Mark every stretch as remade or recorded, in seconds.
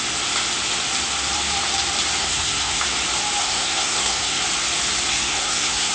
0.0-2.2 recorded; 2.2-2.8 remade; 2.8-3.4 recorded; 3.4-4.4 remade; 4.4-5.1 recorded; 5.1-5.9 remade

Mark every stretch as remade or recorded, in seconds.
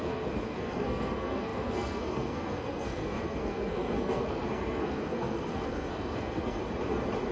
0.0-6.6 remade; 6.6-7.3 recorded